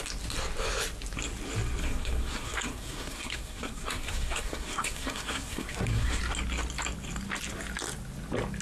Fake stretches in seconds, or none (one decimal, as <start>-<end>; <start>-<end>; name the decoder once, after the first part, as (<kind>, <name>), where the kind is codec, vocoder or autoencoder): 1.8-6.2 (codec, SNAC)